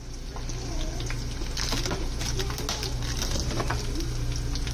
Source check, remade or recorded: recorded